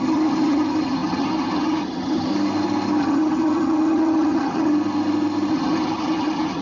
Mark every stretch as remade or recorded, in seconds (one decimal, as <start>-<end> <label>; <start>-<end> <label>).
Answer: 0.0-2.3 remade; 2.3-3.0 recorded; 3.0-4.7 remade; 4.7-5.5 recorded; 5.5-6.6 remade